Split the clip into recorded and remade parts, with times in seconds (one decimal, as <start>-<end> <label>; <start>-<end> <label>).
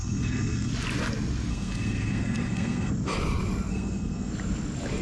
0.0-0.7 remade; 0.7-1.5 recorded; 1.5-2.9 remade; 2.9-3.7 recorded; 3.7-4.3 remade; 4.3-5.0 recorded